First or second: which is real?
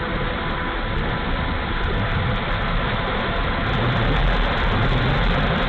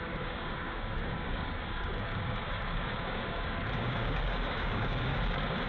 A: first